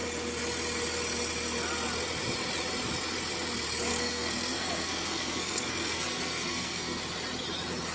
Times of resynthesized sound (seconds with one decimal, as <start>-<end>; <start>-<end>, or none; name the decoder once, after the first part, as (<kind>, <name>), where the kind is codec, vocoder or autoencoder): 3.9-7.0 (codec, SNAC)